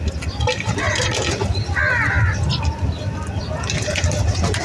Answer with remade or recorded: recorded